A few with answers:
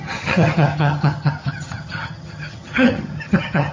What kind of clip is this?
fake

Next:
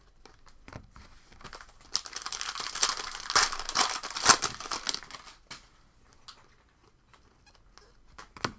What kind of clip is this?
real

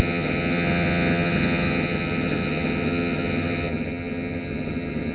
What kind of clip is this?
fake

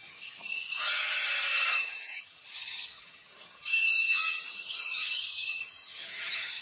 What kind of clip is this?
fake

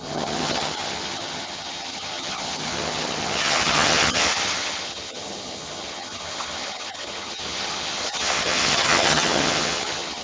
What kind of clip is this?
fake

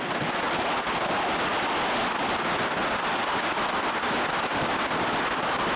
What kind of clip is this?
real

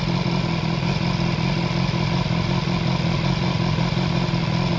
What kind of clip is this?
real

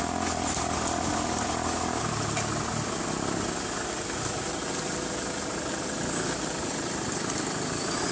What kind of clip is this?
real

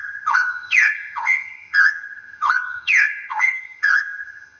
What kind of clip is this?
fake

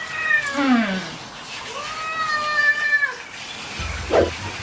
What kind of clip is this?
real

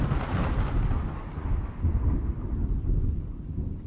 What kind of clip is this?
real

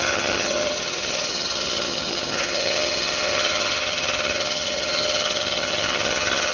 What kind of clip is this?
fake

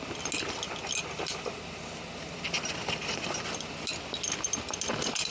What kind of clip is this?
real